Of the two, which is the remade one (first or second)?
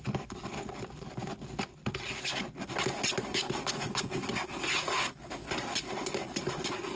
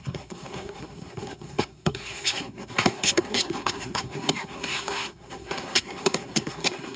second